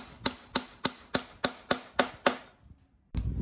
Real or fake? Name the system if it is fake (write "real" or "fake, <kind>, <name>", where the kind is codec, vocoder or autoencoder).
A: real